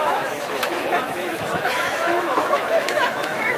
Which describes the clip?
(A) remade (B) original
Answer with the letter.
A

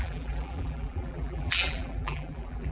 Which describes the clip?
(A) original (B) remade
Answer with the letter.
B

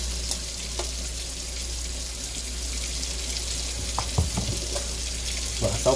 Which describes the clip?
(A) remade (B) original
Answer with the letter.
B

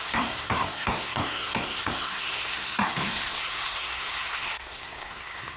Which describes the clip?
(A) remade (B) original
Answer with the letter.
A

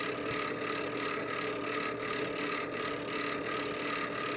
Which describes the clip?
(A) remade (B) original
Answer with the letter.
B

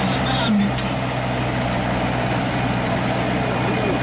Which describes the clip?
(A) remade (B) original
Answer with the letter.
B